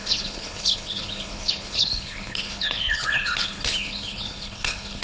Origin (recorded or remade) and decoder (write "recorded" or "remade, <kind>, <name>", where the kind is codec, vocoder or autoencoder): remade, codec, HILCodec